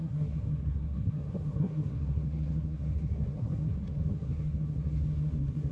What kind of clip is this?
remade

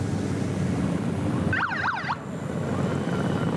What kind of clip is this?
recorded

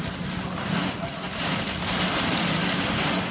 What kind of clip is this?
recorded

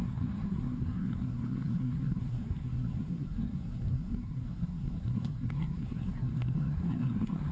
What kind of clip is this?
remade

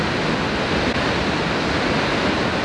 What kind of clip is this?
recorded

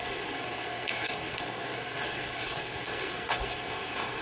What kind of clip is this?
remade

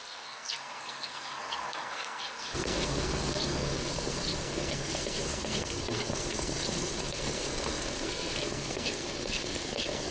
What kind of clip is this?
remade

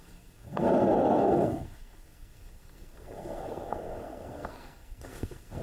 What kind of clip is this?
remade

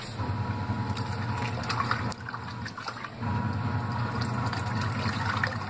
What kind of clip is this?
recorded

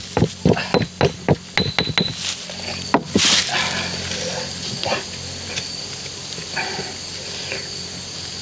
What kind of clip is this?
recorded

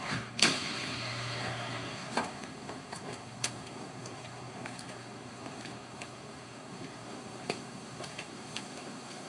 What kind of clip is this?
remade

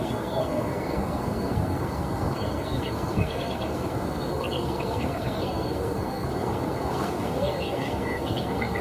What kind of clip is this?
remade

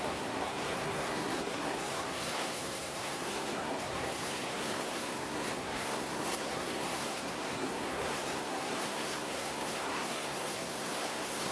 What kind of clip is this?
remade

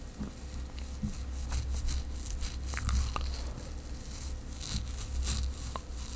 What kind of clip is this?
recorded